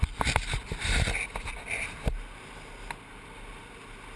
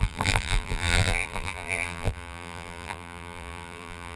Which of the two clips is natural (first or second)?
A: first